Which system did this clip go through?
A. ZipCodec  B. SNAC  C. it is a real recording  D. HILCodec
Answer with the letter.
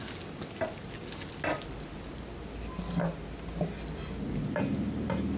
C